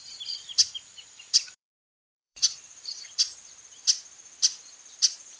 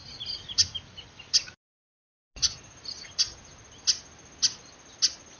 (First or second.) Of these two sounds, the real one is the second